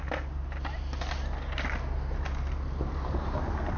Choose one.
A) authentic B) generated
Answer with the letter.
A